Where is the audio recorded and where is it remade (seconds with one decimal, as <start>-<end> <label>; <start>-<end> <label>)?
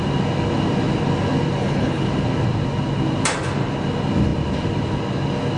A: 0.0-1.6 recorded; 1.6-2.1 remade; 2.1-5.6 recorded